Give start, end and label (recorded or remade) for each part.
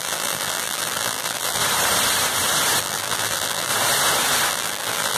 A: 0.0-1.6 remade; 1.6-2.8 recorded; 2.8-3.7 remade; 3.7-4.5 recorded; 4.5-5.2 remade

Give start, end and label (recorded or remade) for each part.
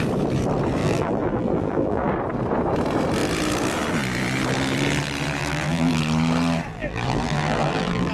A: 0.0-0.8 recorded; 0.8-2.1 remade; 2.1-5.4 recorded; 5.4-6.0 remade; 6.0-6.7 recorded; 6.7-8.1 remade